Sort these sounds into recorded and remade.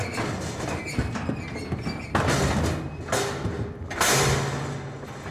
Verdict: recorded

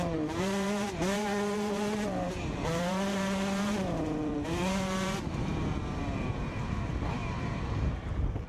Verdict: remade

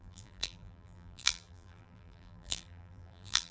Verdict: remade